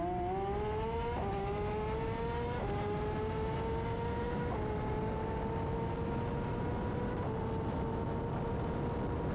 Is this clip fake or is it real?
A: real